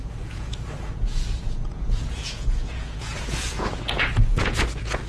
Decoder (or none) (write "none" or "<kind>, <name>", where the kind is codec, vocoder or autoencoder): vocoder, Vocos